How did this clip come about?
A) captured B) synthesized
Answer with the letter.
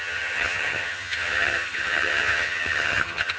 B